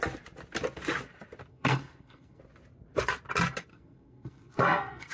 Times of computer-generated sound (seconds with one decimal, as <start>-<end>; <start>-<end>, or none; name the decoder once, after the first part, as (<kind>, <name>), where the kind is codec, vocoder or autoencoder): 1.5-2.4 (codec, SNAC); 3.7-5.1